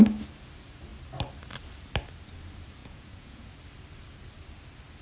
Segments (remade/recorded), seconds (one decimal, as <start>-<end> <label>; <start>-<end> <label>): 0.0-2.8 recorded; 2.8-3.5 remade; 3.5-5.0 recorded